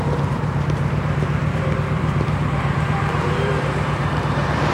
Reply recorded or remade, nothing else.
remade